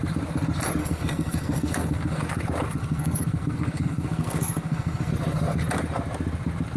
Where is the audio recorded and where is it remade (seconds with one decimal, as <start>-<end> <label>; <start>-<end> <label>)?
0.0-0.8 recorded; 0.8-2.2 remade; 2.2-2.8 recorded; 2.8-5.1 remade; 5.1-6.8 recorded